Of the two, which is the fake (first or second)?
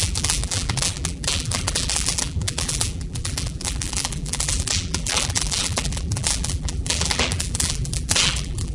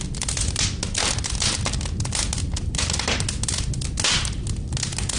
first